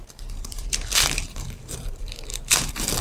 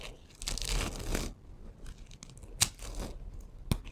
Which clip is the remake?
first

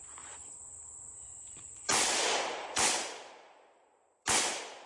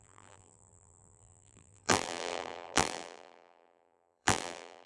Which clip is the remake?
second